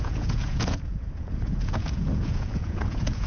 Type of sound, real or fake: fake